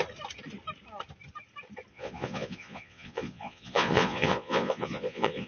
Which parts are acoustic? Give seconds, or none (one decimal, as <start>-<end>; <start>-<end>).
0.0-1.9